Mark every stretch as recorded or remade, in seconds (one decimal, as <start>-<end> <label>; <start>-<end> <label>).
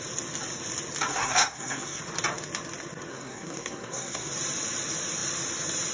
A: 0.0-1.1 recorded; 1.1-2.0 remade; 2.0-3.1 recorded; 3.1-4.3 remade; 4.3-5.9 recorded